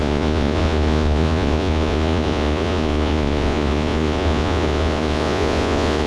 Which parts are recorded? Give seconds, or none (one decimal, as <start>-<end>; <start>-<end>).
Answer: none